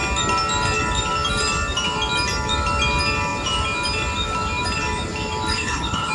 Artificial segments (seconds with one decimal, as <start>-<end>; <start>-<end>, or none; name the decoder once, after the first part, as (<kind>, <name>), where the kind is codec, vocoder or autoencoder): 5.5-6.1 (codec, HILCodec)